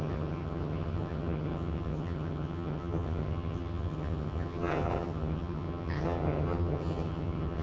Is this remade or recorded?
remade